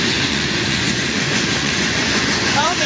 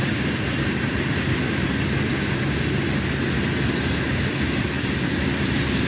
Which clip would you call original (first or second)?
second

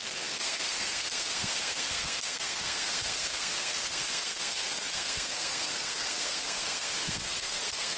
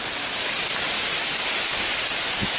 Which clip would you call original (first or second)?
second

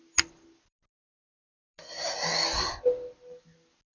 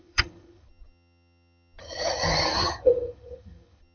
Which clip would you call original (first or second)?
first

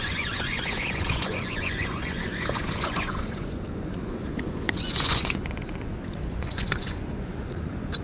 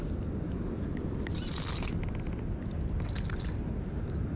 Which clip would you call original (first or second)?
second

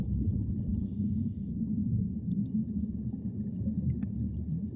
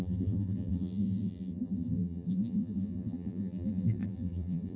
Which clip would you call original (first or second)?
first